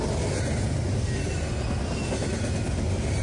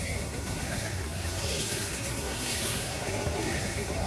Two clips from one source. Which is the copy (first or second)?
second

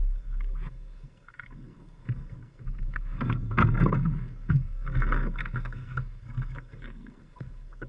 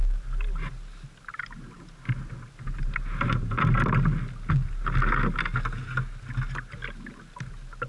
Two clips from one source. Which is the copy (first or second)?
first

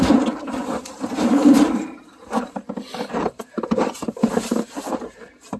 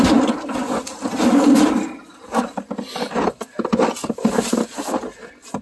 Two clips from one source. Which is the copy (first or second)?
first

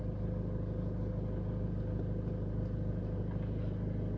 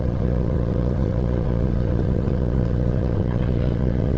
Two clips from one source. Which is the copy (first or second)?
second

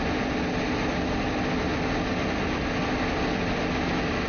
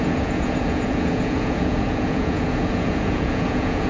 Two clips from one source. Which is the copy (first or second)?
second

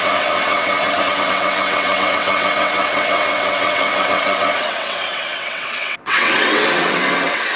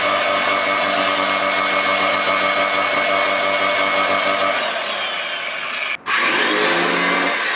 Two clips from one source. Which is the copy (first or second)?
first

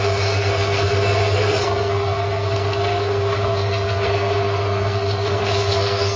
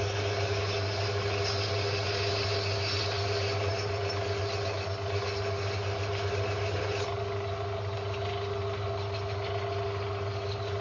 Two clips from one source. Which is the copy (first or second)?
first